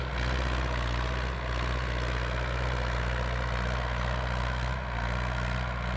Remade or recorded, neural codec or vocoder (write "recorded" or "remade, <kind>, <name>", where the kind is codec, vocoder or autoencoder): recorded